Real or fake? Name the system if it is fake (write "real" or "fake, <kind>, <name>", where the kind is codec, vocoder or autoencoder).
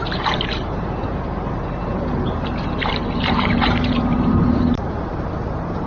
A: fake, vocoder, BigVGAN v2